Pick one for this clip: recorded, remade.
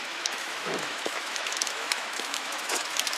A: remade